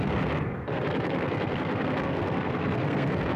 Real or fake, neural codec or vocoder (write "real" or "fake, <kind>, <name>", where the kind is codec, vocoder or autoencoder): fake, codec, SNAC